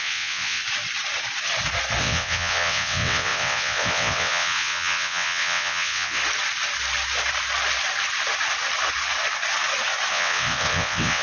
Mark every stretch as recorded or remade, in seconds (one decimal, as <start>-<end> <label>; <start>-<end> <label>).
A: 0.0-0.6 remade; 0.6-2.0 recorded; 2.0-6.2 remade; 6.2-10.1 recorded; 10.1-11.2 remade